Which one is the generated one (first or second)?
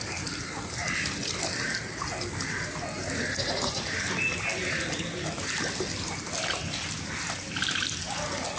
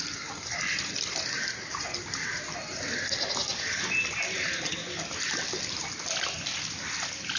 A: second